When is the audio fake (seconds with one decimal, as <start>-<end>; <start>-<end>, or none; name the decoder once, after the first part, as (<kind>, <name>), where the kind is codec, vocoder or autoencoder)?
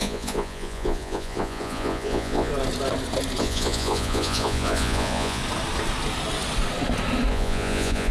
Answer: 0.0-2.5 (vocoder, Vocos); 3.4-5.4; 7.3-8.1